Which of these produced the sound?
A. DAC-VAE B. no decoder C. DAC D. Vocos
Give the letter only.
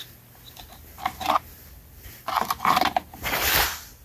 B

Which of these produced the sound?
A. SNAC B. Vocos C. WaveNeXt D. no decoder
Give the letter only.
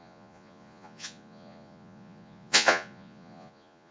B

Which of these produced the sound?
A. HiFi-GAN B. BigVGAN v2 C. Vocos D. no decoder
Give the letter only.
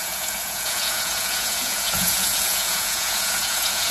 C